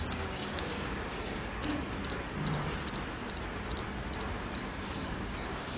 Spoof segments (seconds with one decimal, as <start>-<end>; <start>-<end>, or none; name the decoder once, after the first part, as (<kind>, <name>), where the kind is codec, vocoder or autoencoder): 0.0-1.6 (codec, DAC); 4.6-5.8